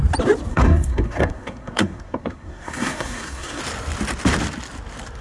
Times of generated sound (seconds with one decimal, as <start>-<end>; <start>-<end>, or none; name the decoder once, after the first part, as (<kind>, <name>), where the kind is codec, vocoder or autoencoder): 0.5-3.6 (codec, SNAC)